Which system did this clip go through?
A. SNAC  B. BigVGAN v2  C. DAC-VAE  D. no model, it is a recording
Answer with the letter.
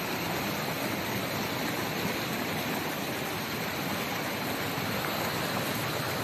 D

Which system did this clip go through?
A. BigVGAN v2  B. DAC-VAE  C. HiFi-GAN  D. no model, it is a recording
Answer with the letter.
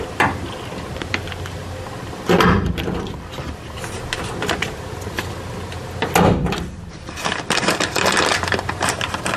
D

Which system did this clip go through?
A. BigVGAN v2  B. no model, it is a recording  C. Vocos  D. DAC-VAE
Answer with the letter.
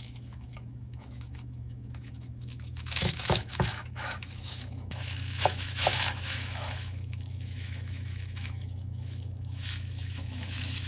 D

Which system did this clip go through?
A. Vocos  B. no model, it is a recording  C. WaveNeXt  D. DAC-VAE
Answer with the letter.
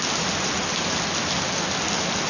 B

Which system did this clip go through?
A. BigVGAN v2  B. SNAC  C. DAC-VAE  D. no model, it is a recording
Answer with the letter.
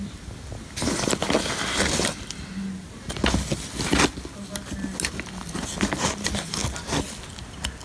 D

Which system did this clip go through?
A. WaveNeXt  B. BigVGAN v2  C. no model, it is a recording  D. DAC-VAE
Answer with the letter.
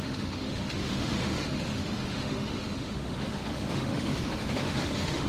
D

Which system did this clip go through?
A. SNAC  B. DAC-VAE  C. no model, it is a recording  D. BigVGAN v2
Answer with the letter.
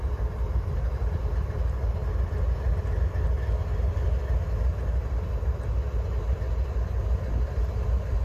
C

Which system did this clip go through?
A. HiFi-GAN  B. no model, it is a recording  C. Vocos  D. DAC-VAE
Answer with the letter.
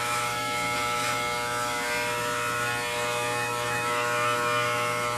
D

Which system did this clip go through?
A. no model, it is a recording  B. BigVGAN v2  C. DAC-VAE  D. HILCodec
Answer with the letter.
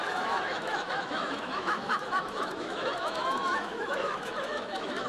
C